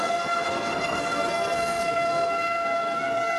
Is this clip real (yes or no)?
no